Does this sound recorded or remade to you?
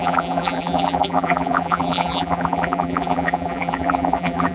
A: remade